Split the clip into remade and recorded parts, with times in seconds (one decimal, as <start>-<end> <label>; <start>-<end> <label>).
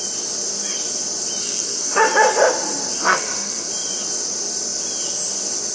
0.0-1.4 recorded; 1.4-2.0 remade; 2.0-2.9 recorded; 2.9-3.7 remade; 3.7-5.7 recorded